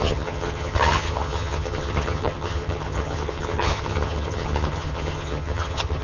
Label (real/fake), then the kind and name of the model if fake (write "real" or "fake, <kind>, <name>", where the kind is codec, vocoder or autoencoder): fake, vocoder, HiFi-GAN